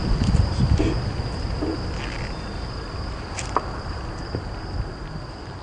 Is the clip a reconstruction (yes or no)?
no